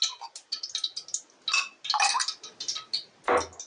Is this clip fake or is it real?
real